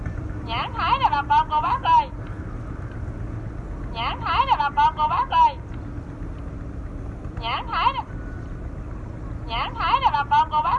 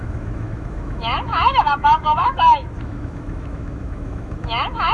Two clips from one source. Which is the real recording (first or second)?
first